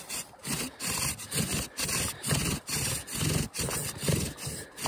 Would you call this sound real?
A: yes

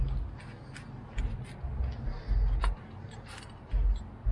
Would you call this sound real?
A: yes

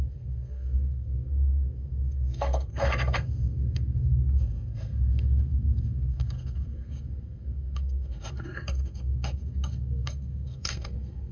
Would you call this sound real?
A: no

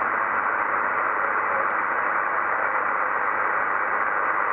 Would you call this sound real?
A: yes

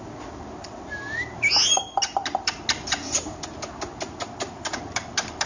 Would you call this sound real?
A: yes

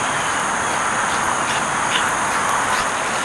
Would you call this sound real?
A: yes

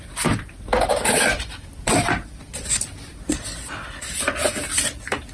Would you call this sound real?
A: yes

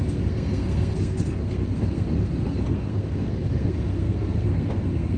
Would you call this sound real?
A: no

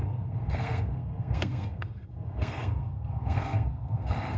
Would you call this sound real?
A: no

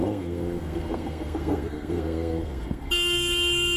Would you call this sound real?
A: no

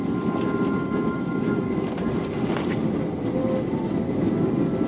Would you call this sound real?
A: yes